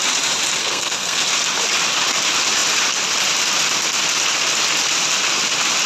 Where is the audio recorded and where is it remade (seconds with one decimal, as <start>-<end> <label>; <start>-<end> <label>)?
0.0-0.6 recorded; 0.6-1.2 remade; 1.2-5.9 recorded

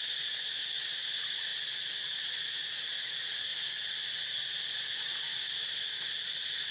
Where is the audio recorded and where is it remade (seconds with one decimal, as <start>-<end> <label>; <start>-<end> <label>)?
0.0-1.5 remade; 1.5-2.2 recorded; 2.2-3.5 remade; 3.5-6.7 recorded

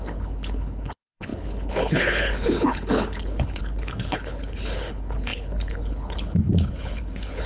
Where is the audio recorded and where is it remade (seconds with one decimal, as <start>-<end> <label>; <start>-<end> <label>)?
0.0-7.5 remade

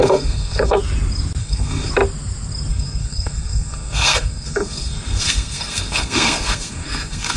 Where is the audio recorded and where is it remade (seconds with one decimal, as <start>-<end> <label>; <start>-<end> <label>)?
0.0-0.8 remade; 0.8-1.4 recorded; 1.4-1.9 remade; 1.9-2.7 recorded; 2.7-7.4 remade

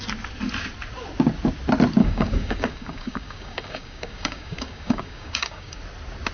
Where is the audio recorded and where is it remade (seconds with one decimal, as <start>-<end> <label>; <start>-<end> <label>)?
0.0-2.0 recorded; 2.0-5.8 remade; 5.8-6.3 recorded